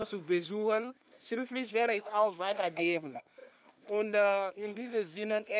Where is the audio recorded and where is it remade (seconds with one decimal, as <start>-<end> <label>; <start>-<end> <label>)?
0.0-5.6 remade